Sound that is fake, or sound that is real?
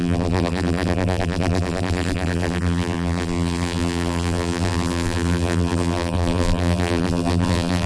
fake